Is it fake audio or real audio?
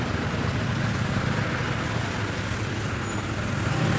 real